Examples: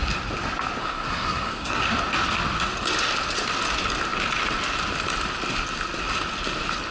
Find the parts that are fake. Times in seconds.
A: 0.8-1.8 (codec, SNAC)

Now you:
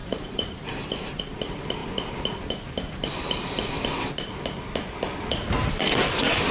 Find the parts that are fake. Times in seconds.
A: 0.0-1.2 (vocoder, BigVGAN v2)

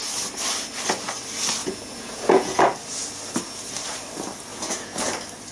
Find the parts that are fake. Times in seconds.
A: 1.6-2.6 (vocoder, Vocos); 4.5-5.1

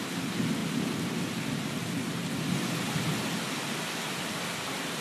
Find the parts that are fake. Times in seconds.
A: none

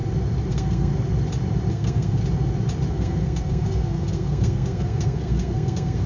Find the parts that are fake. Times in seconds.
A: 0.5-0.9 (codec, SNAC); 1.7-2.2; 2.9-6.1